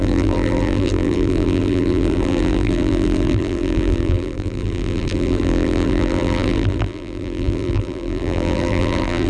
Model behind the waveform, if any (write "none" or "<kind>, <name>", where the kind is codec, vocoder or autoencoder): vocoder, BigVGAN v2